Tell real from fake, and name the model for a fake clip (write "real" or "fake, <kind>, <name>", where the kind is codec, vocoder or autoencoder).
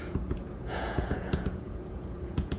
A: fake, vocoder, Vocos